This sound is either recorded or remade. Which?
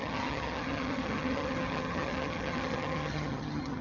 remade